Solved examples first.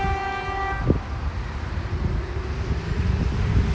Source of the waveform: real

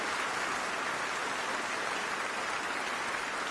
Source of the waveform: fake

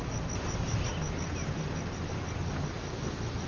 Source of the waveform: real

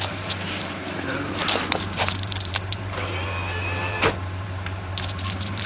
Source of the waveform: fake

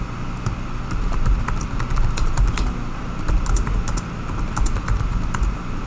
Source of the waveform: real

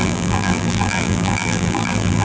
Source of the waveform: fake